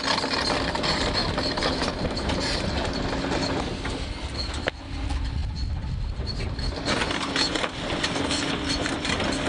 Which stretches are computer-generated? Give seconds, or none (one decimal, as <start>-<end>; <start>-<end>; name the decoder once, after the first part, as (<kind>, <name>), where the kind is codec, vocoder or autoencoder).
1.2-3.0 (vocoder, BigVGAN v2); 5.4-6.7; 7.5-8.5